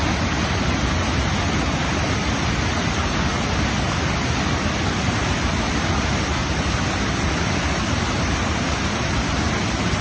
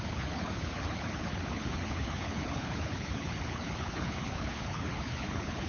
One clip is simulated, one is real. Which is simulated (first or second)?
second